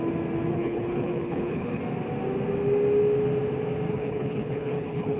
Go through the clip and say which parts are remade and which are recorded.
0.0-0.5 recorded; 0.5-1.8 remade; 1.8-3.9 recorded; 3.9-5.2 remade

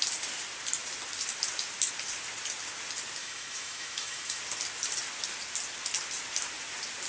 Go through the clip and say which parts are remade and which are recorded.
0.0-3.2 recorded; 3.2-4.4 remade; 4.4-7.1 recorded